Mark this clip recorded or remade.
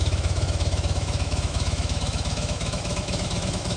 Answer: remade